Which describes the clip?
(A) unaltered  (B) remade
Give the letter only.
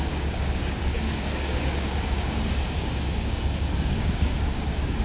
B